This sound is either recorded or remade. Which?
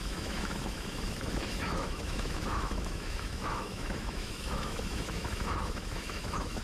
remade